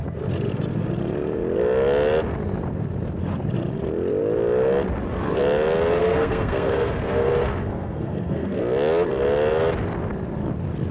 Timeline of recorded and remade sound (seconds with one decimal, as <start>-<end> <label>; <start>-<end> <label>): 0.0-6.0 recorded; 6.0-8.6 remade; 8.6-10.9 recorded